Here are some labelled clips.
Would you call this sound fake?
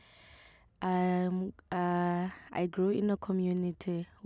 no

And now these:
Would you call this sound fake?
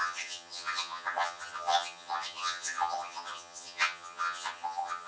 yes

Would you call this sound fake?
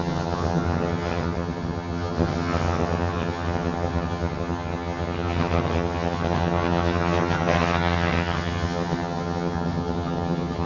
yes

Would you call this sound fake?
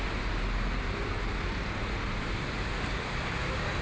no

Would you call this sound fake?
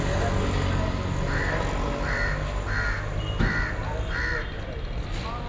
no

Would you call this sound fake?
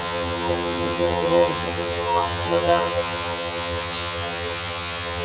yes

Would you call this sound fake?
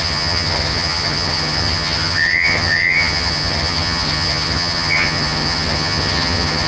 yes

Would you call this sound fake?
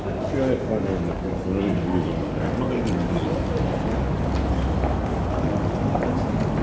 no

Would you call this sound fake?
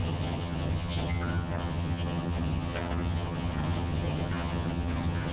yes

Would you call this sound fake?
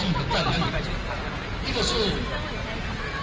no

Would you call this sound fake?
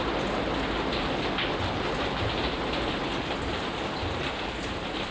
no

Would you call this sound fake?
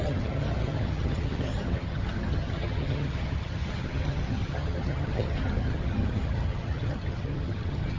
yes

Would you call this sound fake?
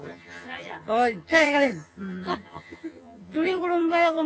yes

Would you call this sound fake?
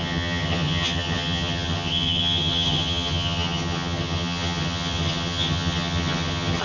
yes